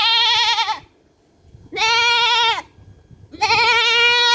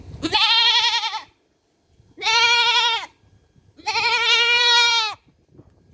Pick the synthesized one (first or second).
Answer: second